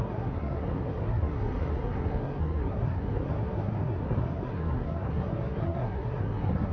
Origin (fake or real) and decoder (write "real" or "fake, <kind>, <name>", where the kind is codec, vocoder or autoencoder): fake, codec, SNAC